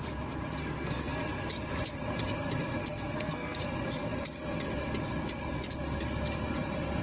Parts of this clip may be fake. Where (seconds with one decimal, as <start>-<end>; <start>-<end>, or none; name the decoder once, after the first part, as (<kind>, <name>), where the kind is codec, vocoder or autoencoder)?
0.6-1.2 (codec, SNAC); 2.8-3.6